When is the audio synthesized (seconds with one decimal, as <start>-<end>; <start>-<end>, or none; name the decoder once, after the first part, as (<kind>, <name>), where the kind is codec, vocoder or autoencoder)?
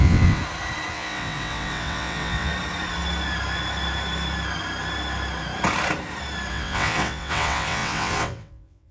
0.0-0.4 (vocoder, WaveNeXt); 0.9-2.5; 6.5-8.9